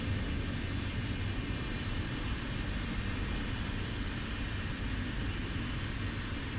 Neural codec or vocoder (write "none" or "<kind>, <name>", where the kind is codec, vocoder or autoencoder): none